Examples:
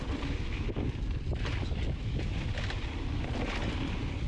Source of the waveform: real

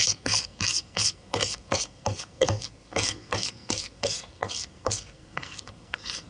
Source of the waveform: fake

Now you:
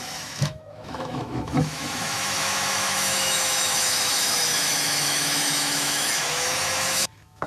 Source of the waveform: fake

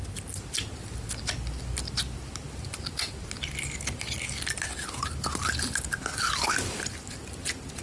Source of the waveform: real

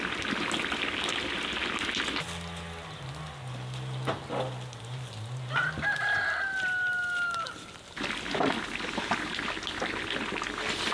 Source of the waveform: real